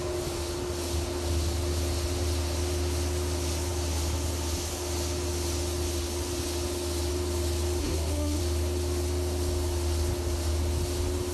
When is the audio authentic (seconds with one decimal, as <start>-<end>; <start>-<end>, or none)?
0.0-7.8; 8.4-11.3